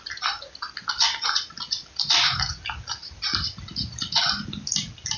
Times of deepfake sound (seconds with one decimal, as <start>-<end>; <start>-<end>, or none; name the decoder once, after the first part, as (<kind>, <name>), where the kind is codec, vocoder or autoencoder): none